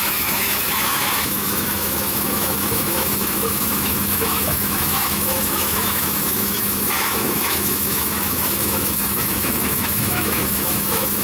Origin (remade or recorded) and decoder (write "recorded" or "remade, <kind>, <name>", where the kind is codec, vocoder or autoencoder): remade, autoencoder, DAC-VAE